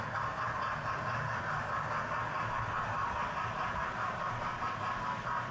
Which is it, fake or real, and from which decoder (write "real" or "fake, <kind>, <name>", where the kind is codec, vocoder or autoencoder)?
real